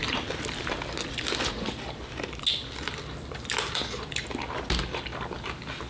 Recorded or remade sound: recorded